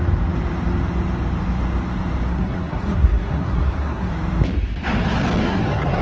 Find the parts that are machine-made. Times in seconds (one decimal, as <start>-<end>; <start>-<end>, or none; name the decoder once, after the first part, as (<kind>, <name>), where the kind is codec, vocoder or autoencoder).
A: 2.3-4.1 (codec, SNAC); 5.4-6.0